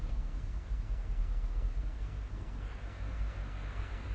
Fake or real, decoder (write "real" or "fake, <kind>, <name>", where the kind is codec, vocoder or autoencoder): fake, codec, SNAC